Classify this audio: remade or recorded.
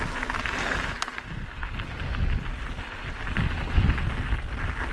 recorded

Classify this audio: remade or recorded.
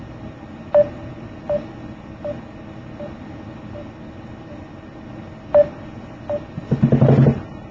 recorded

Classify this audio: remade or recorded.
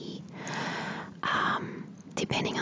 recorded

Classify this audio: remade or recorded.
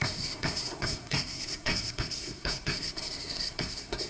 remade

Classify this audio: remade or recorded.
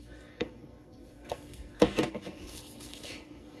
remade